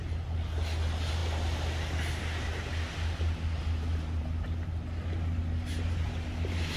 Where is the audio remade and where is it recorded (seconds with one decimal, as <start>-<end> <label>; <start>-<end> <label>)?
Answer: 0.0-6.8 recorded